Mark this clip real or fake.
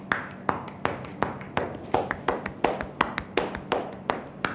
real